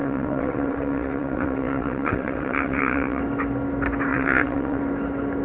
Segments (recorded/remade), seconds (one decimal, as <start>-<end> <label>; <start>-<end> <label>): 0.0-3.2 remade; 3.2-4.1 recorded; 4.1-4.8 remade; 4.8-5.4 recorded

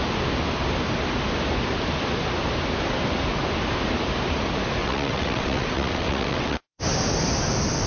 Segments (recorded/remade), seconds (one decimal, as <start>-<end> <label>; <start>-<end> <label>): 0.0-4.8 recorded; 4.8-6.8 remade; 6.8-7.9 recorded

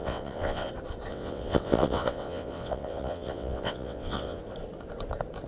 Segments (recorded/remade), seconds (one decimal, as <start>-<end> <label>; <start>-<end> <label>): 0.0-0.7 remade; 0.7-1.1 recorded; 1.1-4.4 remade; 4.4-5.5 recorded

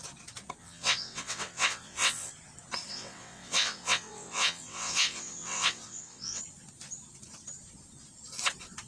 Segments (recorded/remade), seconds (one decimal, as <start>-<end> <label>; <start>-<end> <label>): 0.0-0.6 recorded; 0.6-2.3 remade; 2.3-2.9 recorded; 2.9-6.4 remade; 6.4-8.9 recorded

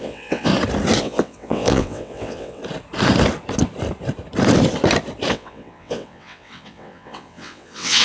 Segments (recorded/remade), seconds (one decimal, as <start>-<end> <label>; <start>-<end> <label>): 0.0-0.5 remade; 0.5-1.0 recorded; 1.0-2.6 remade; 2.6-5.3 recorded; 5.3-8.0 remade

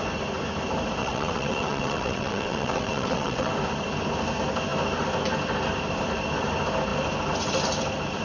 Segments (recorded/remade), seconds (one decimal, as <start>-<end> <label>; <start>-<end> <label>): 0.0-1.0 recorded; 1.0-3.5 remade; 3.5-8.2 recorded